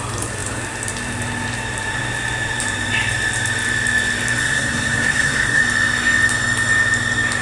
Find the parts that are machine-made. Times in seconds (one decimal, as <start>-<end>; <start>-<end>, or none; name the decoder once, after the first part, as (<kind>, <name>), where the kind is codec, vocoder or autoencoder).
4.4-5.6 (codec, SNAC)